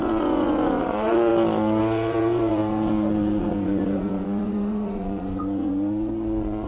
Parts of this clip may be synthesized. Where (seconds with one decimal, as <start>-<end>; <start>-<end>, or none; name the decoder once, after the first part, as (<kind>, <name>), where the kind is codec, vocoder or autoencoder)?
0.0-1.3 (vocoder, Vocos); 1.8-6.7